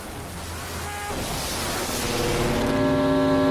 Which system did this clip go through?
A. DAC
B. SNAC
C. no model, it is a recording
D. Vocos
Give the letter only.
C